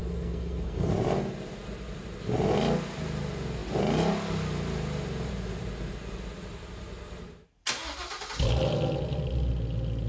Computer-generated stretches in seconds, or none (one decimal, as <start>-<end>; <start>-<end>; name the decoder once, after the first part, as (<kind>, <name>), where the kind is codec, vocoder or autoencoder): 0.0-0.9 (codec, SNAC)